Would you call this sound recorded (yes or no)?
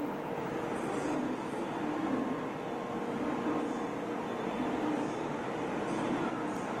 yes